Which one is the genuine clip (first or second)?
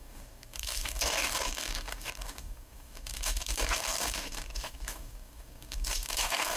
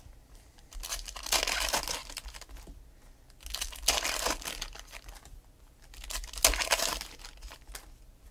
second